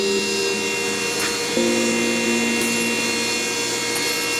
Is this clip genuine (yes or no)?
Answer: yes